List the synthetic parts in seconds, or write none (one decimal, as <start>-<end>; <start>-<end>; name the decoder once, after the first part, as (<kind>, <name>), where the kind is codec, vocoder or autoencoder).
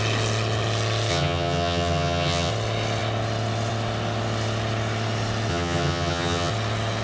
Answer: 1.1-2.5 (vocoder, HiFi-GAN); 5.5-6.5